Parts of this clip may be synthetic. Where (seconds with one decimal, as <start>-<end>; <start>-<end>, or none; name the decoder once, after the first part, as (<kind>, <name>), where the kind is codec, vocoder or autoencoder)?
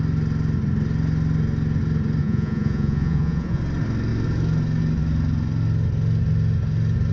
2.2-3.6 (vocoder, Vocos)